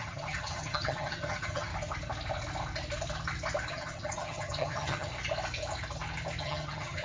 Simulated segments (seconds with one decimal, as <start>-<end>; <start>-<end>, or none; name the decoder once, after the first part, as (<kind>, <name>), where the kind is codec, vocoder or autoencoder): 0.0-1.7 (vocoder, HiFi-GAN); 3.7-5.1; 6.4-7.0